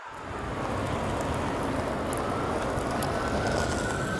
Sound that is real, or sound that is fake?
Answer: real